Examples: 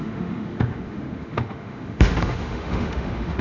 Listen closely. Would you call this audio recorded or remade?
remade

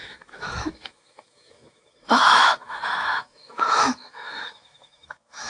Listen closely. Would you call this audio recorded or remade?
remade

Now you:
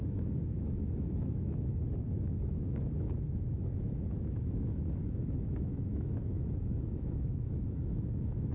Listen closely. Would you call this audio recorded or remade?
remade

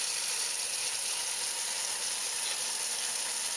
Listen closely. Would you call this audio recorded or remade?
recorded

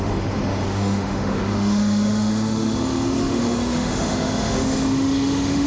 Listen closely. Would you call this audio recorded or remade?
remade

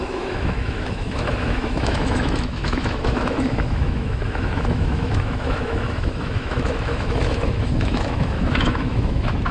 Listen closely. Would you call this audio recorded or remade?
remade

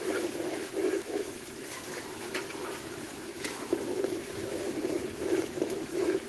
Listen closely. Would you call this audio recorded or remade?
remade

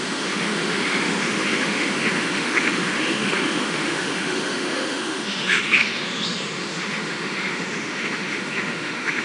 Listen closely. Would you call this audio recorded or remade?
remade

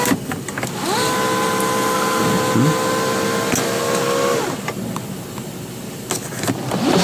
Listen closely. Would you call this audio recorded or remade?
recorded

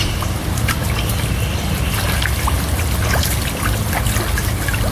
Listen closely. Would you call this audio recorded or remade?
recorded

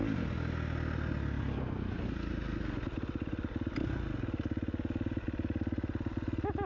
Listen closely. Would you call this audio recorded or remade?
recorded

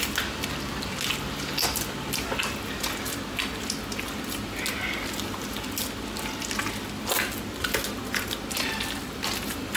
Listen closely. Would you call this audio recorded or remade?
recorded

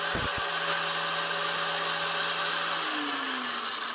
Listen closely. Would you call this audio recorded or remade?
recorded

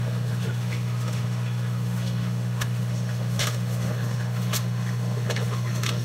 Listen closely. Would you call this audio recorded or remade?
remade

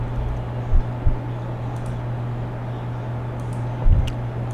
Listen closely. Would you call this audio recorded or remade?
recorded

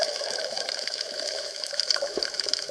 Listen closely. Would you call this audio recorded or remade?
remade